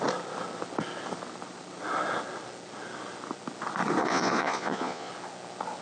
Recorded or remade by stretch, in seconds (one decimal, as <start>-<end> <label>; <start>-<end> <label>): 0.0-4.0 recorded; 4.0-5.1 remade; 5.1-5.8 recorded

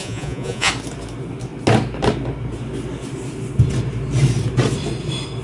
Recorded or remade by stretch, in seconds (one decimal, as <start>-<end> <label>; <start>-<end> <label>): 0.0-0.7 remade; 0.7-5.4 recorded

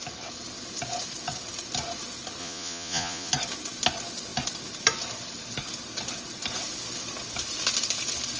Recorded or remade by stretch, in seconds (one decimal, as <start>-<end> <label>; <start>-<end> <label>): 0.0-2.4 recorded; 2.4-3.3 remade; 3.3-8.4 recorded

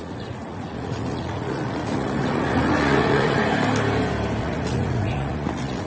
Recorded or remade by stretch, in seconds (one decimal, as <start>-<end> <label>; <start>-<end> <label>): 0.0-3.4 remade; 3.4-4.4 recorded; 4.4-5.9 remade

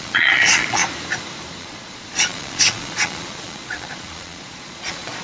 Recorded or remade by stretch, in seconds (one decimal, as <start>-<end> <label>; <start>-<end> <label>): 0.0-0.8 remade; 0.8-1.6 recorded; 1.6-5.2 remade

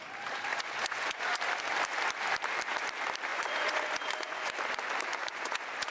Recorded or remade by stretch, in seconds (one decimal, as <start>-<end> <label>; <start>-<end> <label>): 0.0-0.5 recorded; 0.5-1.4 remade; 1.4-3.3 recorded; 3.3-4.5 remade; 4.5-5.2 recorded; 5.2-5.9 remade